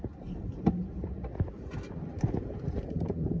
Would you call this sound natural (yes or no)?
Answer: no